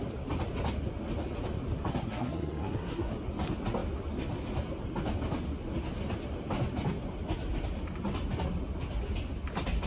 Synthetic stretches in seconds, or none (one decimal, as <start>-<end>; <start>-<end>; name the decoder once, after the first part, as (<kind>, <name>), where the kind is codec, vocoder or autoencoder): 1.9-3.1 (codec, SNAC)